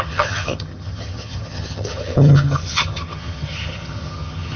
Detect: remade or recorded remade